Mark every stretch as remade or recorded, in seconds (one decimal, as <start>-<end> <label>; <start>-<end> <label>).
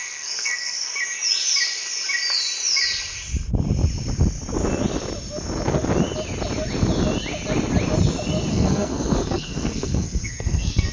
0.0-0.9 remade; 0.9-8.5 recorded; 8.5-10.9 remade